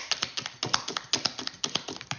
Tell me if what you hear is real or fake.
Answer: real